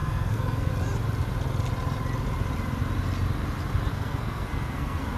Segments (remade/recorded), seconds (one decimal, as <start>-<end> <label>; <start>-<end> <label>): 0.0-0.7 remade; 0.7-3.9 recorded; 3.9-5.2 remade